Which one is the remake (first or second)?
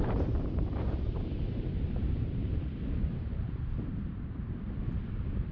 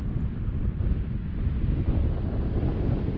first